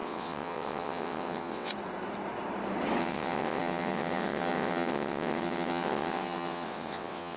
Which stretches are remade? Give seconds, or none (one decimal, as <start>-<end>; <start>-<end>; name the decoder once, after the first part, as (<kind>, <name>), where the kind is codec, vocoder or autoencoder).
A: 0.0-1.7 (vocoder, WaveNeXt); 3.0-7.4